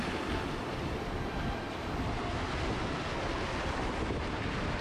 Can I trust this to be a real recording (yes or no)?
yes